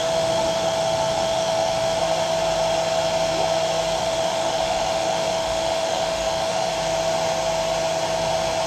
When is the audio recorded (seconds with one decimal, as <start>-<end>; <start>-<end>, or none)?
2.0-4.0; 6.7-8.7